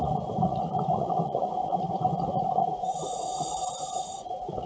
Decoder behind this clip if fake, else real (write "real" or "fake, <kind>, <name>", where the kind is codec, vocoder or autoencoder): fake, vocoder, Vocos